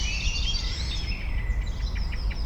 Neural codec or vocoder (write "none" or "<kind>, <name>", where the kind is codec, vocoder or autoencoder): none